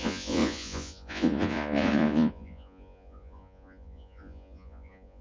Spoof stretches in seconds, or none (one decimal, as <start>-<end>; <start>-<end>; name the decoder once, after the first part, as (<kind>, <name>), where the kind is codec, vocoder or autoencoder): 0.0-5.2 (vocoder, Vocos)